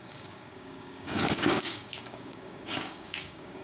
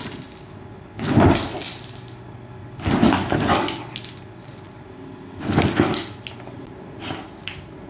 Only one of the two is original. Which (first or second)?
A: second